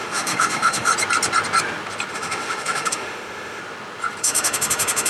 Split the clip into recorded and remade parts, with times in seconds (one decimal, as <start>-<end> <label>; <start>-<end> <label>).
0.0-0.9 remade; 0.9-2.1 recorded; 2.1-3.6 remade; 3.6-4.2 recorded; 4.2-5.1 remade